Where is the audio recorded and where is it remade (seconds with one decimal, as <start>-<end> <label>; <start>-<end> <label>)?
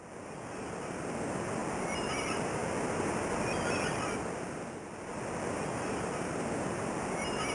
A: 0.0-7.5 recorded